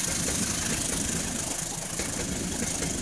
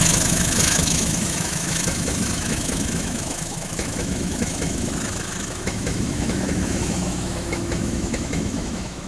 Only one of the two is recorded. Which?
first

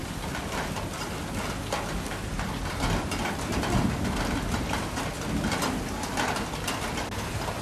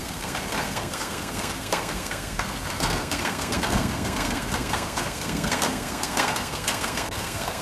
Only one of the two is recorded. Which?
first